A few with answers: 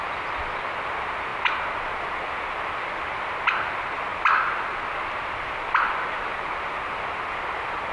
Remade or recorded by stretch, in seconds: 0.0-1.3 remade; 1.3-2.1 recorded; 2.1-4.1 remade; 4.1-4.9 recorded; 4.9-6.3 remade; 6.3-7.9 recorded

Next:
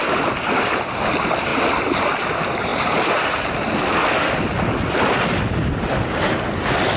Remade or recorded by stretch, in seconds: 0.0-7.0 recorded

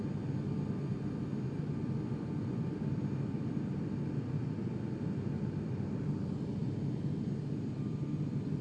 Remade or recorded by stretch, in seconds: 0.0-8.6 recorded

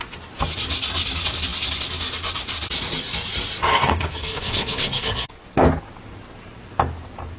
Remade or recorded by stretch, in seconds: 0.0-3.7 recorded; 3.7-5.3 remade; 5.3-7.4 recorded

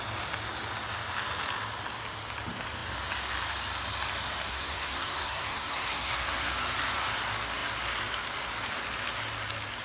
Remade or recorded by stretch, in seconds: 0.0-4.5 recorded; 4.5-6.5 remade; 6.5-9.8 recorded

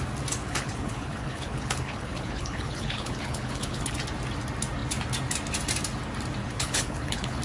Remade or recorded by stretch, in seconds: 0.0-0.4 recorded; 0.4-3.9 remade; 3.9-6.4 recorded; 6.4-7.4 remade

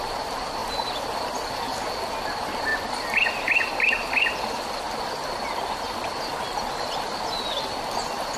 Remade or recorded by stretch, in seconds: 0.0-8.4 recorded

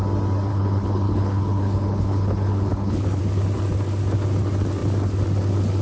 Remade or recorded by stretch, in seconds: 0.0-0.5 recorded; 0.5-3.2 remade; 3.2-5.8 recorded